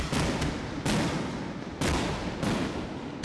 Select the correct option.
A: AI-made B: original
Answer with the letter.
B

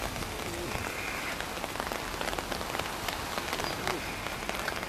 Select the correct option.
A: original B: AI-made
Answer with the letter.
A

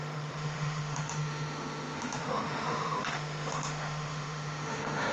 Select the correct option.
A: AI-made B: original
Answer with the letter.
A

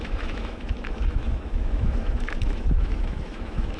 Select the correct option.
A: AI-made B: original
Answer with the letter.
A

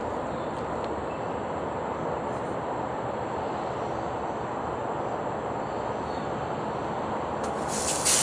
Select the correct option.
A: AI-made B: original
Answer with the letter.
B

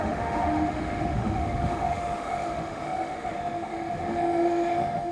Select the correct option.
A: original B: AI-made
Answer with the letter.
B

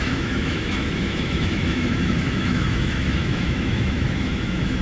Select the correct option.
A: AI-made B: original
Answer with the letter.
A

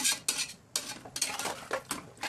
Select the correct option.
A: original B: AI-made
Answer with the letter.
A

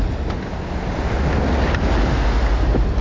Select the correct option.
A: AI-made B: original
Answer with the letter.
B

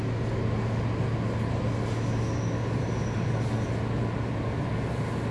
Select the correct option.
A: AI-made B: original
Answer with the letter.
B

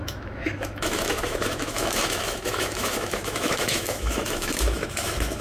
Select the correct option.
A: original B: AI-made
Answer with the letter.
B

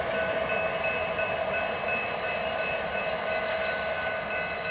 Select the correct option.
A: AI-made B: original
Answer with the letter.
B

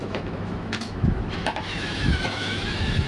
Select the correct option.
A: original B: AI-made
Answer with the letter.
B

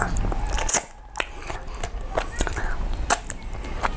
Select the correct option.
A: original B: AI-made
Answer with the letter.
A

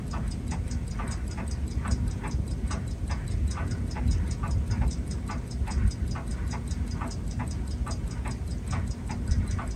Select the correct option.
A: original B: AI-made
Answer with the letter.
A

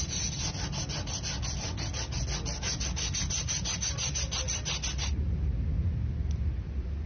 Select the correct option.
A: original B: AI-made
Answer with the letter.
A